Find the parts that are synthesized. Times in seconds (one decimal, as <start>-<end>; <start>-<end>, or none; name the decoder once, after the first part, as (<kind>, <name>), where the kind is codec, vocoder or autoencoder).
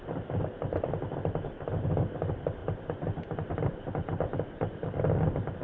none